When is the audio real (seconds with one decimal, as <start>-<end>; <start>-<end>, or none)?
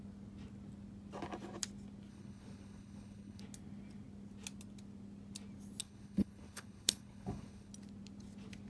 0.0-2.1; 3.4-5.8; 7.7-8.7